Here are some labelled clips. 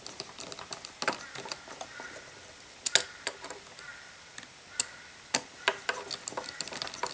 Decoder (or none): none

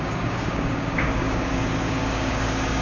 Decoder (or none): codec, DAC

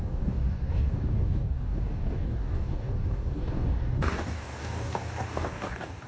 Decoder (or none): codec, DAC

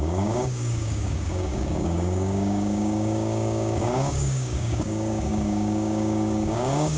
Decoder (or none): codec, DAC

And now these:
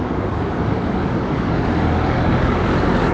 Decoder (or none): codec, DAC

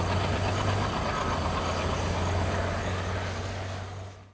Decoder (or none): none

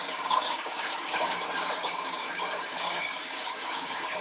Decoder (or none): codec, DAC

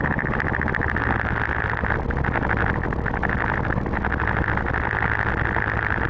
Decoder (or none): none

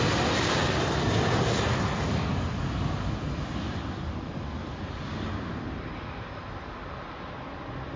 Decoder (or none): none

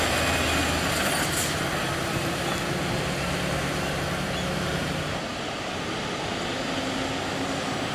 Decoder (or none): none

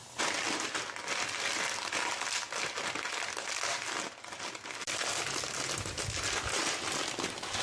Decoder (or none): none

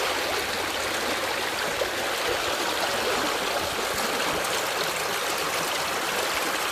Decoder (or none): none